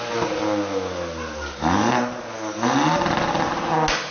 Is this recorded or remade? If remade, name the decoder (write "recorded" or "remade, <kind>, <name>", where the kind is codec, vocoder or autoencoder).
recorded